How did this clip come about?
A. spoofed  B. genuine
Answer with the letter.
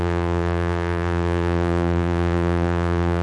A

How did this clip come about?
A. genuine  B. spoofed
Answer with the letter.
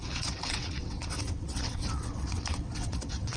B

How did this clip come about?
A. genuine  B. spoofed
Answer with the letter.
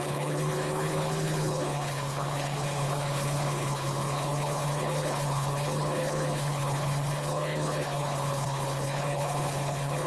B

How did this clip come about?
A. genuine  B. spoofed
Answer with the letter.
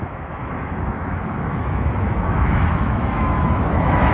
B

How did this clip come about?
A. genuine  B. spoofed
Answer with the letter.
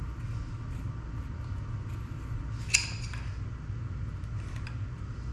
A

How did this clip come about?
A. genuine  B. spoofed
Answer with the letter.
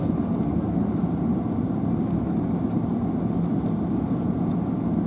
A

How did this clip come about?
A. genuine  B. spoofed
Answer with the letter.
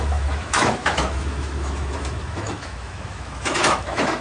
B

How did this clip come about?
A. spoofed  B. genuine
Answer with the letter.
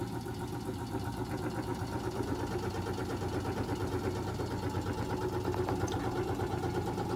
B